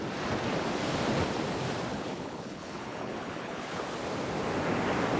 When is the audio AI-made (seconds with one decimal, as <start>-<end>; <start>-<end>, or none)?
1.9-3.8

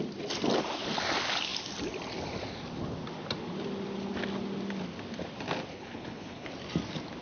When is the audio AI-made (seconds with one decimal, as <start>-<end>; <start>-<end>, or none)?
5.7-6.5

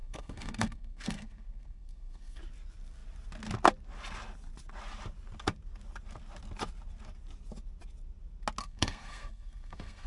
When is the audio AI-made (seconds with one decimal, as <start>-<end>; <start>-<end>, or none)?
0.0-2.4; 8.6-10.1

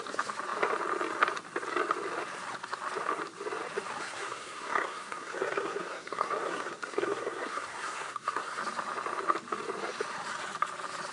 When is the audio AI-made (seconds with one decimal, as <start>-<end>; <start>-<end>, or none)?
4.0-8.6

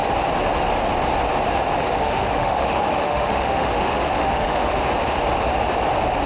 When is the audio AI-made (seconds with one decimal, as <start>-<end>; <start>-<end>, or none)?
1.9-4.8

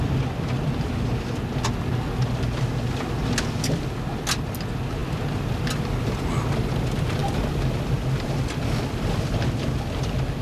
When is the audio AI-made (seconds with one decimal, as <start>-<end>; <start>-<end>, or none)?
none

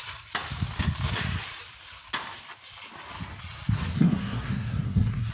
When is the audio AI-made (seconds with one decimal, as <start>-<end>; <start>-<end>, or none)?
3.9-5.3

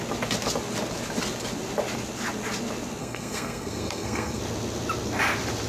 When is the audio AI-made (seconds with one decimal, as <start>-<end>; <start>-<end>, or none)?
3.0-4.4